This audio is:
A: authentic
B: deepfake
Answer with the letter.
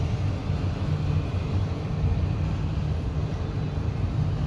A